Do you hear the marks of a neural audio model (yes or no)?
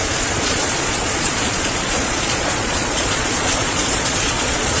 yes